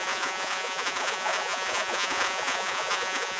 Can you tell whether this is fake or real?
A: fake